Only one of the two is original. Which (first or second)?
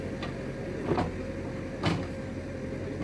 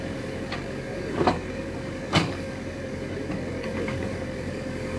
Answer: first